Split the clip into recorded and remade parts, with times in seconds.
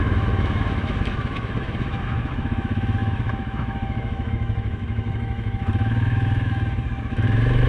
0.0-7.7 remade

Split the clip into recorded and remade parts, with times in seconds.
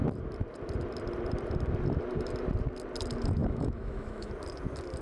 0.0-3.4 recorded; 3.4-4.3 remade; 4.3-5.0 recorded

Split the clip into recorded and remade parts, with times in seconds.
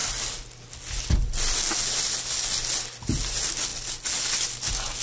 0.0-5.0 recorded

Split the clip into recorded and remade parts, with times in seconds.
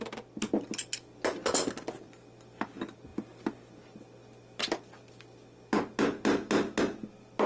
0.0-7.5 recorded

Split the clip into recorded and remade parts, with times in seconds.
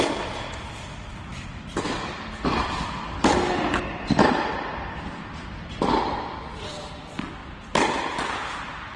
0.0-1.3 recorded; 1.3-4.5 remade; 4.5-7.4 recorded; 7.4-8.1 remade; 8.1-9.0 recorded